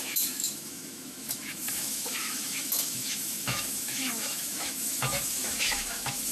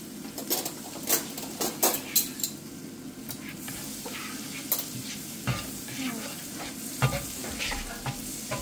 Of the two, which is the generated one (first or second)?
first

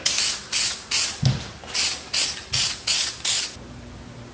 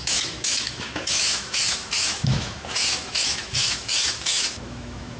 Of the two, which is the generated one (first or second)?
second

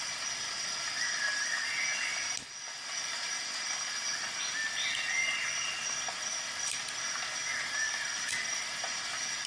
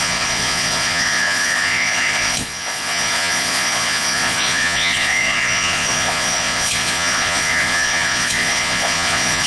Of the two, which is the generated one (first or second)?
second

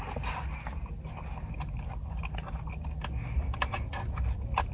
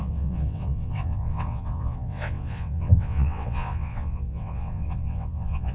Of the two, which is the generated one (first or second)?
second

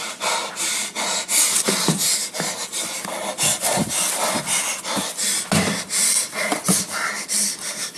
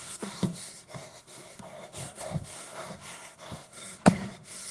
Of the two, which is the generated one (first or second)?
second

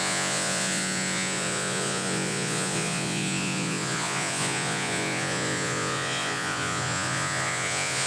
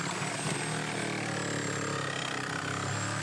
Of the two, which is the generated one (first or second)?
first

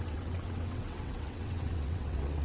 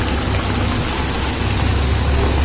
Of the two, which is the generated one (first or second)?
first